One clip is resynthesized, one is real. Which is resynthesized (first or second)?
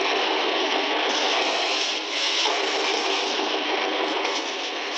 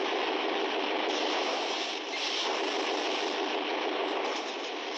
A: first